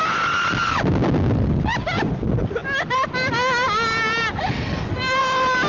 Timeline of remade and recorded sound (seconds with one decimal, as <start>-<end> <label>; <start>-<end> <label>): 0.0-5.7 recorded